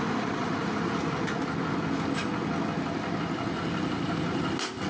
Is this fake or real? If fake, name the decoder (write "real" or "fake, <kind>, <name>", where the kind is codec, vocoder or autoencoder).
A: real